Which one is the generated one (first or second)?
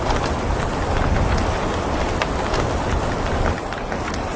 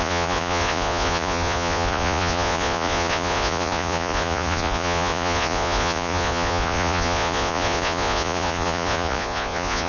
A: second